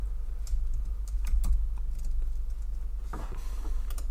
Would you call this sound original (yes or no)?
yes